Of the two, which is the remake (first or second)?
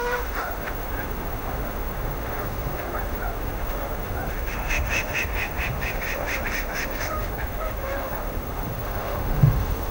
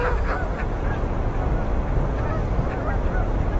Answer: first